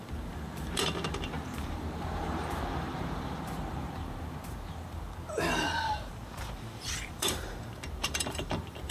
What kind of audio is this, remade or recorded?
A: remade